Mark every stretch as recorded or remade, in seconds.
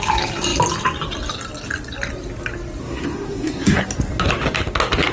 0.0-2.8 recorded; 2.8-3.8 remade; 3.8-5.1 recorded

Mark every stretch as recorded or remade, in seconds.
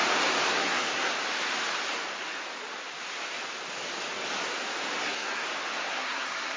0.0-0.5 recorded; 0.5-1.1 remade; 1.1-5.0 recorded; 5.0-5.4 remade; 5.4-5.9 recorded; 5.9-6.6 remade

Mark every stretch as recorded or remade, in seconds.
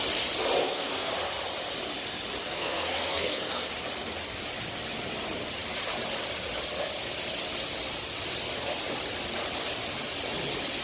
0.0-0.6 recorded; 0.6-1.1 remade; 1.1-2.4 recorded; 2.4-3.7 remade; 3.7-10.8 recorded